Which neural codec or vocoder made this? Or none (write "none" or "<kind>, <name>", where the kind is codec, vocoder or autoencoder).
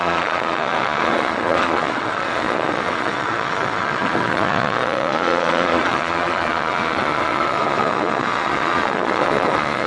vocoder, Vocos